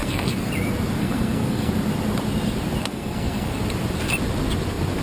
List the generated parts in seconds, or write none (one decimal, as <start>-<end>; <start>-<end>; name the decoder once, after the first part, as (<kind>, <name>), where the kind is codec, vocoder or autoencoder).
0.0-0.5 (codec, SNAC); 1.0-1.7; 2.8-3.6